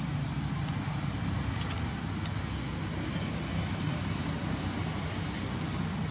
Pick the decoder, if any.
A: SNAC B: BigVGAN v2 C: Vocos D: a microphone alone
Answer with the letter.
D